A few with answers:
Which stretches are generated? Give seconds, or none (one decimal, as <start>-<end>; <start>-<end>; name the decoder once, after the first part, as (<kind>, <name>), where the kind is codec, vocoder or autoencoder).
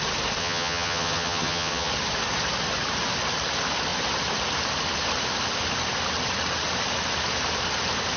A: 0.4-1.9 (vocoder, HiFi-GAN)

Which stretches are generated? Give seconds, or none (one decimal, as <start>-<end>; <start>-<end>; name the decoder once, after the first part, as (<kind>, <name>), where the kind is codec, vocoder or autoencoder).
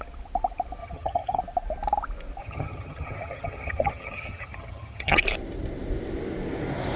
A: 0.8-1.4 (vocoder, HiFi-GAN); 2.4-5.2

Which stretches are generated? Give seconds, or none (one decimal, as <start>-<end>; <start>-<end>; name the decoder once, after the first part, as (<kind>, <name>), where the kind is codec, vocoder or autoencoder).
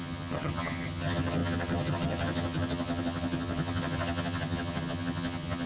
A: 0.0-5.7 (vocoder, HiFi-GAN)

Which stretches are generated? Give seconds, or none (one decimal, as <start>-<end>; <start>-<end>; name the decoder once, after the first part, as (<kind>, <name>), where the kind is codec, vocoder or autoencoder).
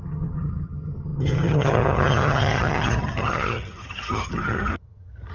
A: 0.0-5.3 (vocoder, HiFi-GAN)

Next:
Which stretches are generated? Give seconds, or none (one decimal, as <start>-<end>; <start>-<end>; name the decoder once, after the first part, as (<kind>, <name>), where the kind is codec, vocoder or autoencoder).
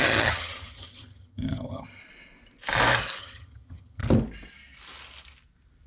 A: 0.0-2.0 (vocoder, HiFi-GAN); 3.2-4.0